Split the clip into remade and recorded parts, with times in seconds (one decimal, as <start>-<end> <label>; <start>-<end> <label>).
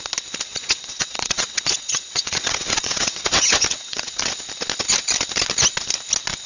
0.0-0.5 recorded; 0.5-4.3 remade; 4.3-6.5 recorded